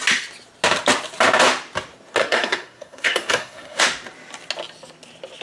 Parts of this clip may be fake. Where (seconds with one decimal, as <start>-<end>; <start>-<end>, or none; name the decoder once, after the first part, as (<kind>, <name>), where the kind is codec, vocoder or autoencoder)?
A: 2.2-3.8 (codec, SNAC)